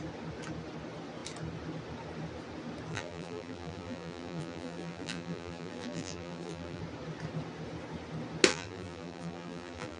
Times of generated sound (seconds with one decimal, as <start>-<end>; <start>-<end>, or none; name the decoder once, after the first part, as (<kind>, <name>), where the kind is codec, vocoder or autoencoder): 2.9-6.8 (vocoder, BigVGAN v2); 8.5-10.0